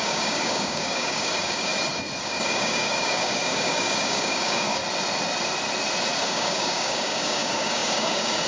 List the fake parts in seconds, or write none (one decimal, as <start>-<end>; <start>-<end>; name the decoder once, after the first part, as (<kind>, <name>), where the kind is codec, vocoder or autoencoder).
0.0-1.7 (codec, DAC); 2.2-4.8; 6.2-8.5